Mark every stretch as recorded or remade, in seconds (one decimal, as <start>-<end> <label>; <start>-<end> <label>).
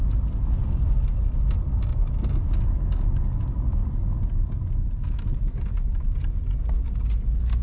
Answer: 0.0-7.6 recorded